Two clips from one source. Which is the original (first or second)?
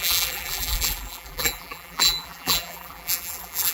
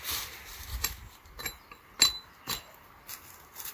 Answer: second